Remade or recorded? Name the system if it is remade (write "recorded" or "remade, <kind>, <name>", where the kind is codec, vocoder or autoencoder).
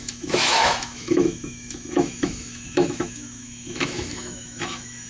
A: remade, autoencoder, DAC-VAE